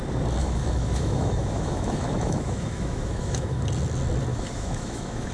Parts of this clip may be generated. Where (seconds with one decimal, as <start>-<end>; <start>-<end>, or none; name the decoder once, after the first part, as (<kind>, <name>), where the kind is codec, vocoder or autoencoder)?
0.4-3.6 (autoencoder, DAC-VAE); 4.3-5.3